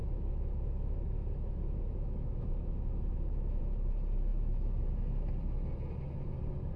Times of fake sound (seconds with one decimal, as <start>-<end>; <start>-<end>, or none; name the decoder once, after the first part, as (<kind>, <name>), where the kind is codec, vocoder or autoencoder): 0.0-3.6 (autoencoder, DAC-VAE); 4.3-4.9